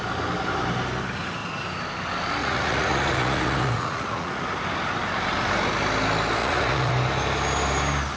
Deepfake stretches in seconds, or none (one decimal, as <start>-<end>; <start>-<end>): 2.4-4.4; 6.4-6.9

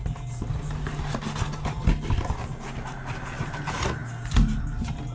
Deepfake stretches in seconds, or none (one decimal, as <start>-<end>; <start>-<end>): none

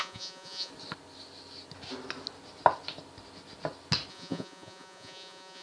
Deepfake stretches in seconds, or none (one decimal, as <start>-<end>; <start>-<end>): 0.0-0.7; 4.1-5.6

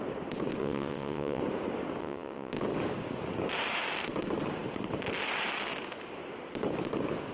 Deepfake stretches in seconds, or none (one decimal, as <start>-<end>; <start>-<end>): 0.6-1.4; 2.0-2.5

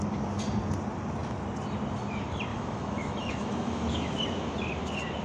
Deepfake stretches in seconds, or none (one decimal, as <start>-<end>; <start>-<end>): 2.5-4.2

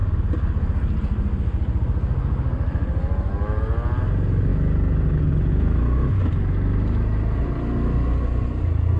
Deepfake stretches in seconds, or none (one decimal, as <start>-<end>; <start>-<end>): none